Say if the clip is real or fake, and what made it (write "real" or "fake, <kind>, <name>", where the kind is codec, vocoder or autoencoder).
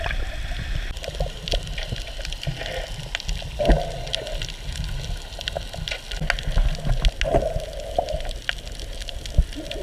real